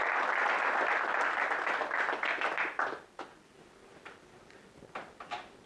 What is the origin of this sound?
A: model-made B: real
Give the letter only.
B